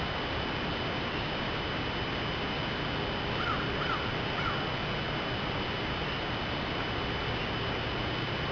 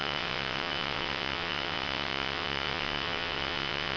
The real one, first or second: first